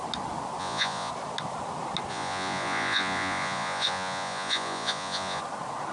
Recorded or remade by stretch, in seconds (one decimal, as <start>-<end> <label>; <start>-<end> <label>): 0.0-0.6 recorded; 0.6-1.1 remade; 1.1-2.1 recorded; 2.1-5.4 remade; 5.4-5.9 recorded